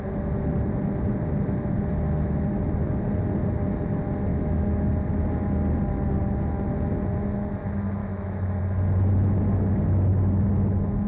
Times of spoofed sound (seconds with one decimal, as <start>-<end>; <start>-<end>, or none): 4.3-4.9; 8.0-8.6